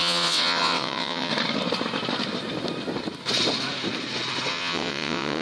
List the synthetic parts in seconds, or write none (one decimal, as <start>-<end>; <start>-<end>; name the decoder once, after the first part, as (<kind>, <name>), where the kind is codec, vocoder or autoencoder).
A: 0.0-1.3 (vocoder, WaveNeXt); 4.5-5.4